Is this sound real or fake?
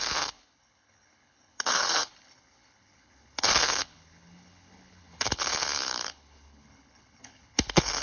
fake